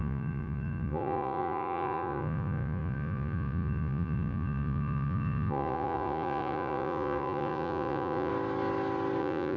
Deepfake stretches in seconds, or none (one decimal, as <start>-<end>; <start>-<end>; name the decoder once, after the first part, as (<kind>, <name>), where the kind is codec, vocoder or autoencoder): 0.0-8.3 (vocoder, Vocos); 9.2-9.6